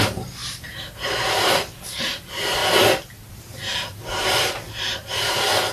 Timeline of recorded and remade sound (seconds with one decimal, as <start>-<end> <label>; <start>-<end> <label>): 0.0-2.6 remade; 2.6-3.3 recorded; 3.3-5.7 remade